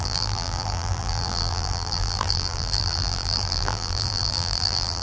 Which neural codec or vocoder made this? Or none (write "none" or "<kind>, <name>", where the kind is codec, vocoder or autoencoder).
vocoder, BigVGAN v2